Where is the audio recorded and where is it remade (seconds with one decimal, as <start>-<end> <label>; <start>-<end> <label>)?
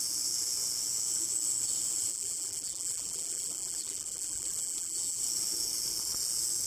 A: 0.0-2.1 recorded; 2.1-5.2 remade; 5.2-6.7 recorded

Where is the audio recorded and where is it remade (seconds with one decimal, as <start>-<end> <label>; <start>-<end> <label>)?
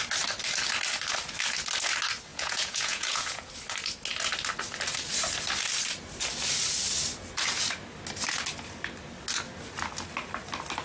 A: 0.0-2.3 recorded; 2.3-3.5 remade; 3.5-10.8 recorded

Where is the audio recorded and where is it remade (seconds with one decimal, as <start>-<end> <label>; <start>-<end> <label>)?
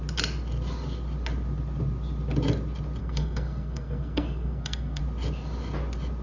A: 0.0-3.0 recorded; 3.0-5.0 remade; 5.0-6.2 recorded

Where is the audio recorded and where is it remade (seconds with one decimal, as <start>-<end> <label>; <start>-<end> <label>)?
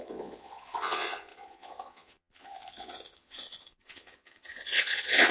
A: 0.0-5.3 remade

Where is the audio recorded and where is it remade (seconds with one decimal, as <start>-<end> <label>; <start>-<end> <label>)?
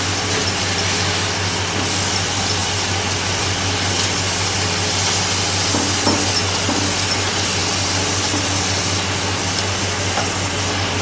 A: 0.0-11.0 recorded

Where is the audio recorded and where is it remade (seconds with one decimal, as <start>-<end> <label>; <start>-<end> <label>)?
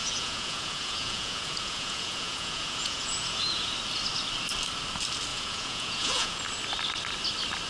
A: 0.0-3.7 remade; 3.7-5.3 recorded; 5.3-6.4 remade; 6.4-7.7 recorded